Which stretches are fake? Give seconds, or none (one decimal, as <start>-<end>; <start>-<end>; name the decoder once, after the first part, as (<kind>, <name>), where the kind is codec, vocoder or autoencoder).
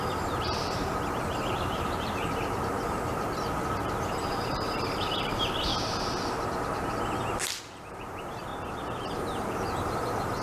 0.0-5.7 (vocoder, BigVGAN v2); 7.6-8.5; 9.1-10.4